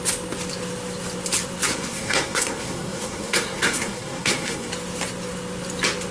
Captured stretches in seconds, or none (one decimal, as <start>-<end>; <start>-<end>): 0.0-1.7; 4.7-6.1